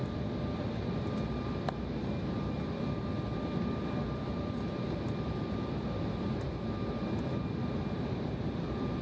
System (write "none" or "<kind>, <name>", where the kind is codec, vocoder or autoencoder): none